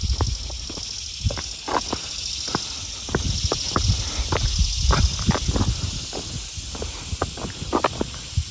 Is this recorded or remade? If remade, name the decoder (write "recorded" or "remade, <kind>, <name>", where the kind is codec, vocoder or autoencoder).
recorded